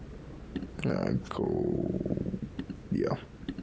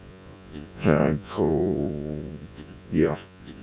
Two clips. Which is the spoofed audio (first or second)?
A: second